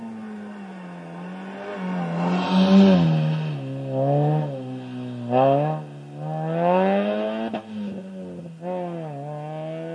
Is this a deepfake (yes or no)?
no